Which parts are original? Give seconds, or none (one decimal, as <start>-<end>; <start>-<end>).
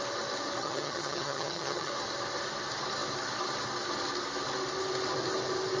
0.0-0.6; 1.9-5.8